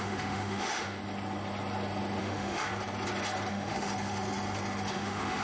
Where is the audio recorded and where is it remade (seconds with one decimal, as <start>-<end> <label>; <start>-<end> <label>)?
0.0-1.0 remade; 1.0-2.2 recorded; 2.2-2.7 remade; 2.7-3.5 recorded; 3.5-3.9 remade; 3.9-4.9 recorded; 4.9-5.4 remade